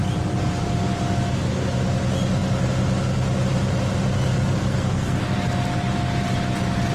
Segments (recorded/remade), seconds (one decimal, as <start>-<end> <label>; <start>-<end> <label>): 0.0-4.6 recorded; 4.6-5.2 remade; 5.2-6.9 recorded